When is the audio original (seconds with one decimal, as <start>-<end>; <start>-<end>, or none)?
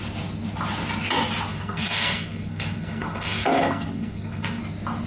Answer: 0.0-1.5; 4.6-5.1